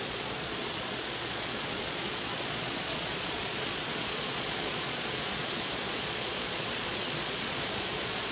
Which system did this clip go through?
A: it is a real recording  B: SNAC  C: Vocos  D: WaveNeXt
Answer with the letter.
C